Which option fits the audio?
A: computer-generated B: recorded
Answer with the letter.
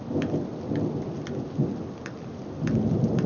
B